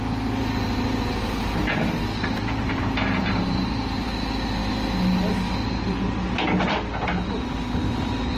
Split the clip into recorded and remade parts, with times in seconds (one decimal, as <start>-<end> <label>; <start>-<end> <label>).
0.0-1.1 recorded; 1.1-4.1 remade; 4.1-8.4 recorded